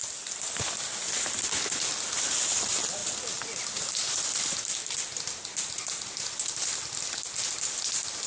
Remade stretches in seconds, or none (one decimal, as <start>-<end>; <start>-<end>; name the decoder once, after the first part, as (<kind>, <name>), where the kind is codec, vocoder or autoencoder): none